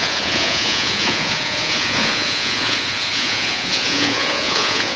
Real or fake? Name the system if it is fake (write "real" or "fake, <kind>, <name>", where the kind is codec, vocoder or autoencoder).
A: fake, vocoder, Vocos